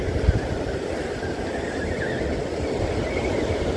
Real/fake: real